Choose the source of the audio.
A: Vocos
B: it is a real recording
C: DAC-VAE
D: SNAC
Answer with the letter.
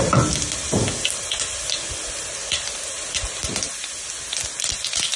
B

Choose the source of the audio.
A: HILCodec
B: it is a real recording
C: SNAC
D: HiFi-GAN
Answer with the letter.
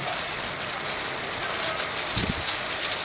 B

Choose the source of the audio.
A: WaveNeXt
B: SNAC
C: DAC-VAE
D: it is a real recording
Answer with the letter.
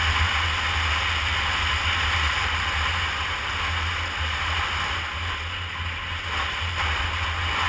D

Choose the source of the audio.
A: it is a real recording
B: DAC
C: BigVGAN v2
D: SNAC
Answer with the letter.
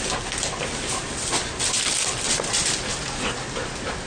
A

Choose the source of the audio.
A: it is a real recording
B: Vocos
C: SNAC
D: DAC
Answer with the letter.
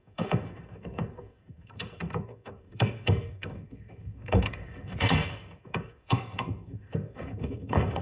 C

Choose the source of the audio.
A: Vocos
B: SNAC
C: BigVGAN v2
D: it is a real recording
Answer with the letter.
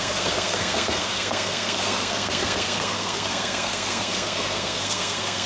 B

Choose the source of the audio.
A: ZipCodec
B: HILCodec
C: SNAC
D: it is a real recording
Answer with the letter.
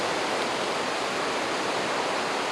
D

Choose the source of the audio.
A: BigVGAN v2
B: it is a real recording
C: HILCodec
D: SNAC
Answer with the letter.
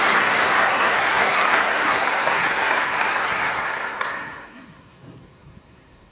D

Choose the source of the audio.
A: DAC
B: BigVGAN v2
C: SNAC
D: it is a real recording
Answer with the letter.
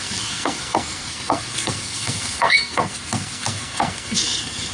C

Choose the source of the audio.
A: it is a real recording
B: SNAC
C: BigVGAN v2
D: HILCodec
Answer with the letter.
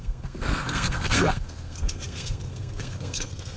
B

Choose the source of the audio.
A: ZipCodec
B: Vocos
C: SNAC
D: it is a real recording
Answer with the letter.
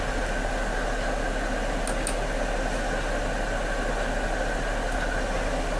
D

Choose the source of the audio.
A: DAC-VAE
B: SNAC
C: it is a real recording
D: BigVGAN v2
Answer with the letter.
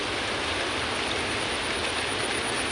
C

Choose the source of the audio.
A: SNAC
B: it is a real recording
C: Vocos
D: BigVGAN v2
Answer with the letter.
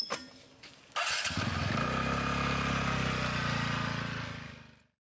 B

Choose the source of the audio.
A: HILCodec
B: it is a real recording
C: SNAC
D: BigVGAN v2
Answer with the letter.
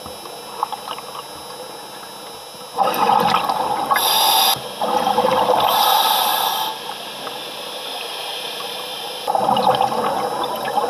B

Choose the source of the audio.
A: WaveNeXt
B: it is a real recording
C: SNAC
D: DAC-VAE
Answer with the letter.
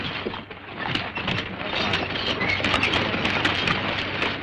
B